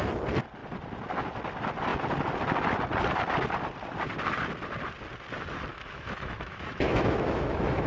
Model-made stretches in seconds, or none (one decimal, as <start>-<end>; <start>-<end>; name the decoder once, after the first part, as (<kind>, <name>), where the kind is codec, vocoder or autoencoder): 5.7-7.9 (autoencoder, DAC-VAE)